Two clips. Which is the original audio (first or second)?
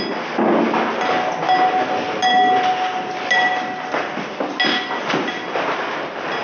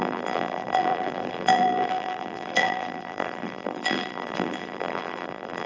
first